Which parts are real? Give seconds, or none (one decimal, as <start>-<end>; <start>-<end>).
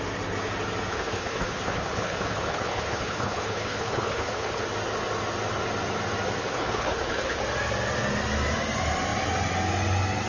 0.0-0.9; 4.6-6.4; 7.4-10.3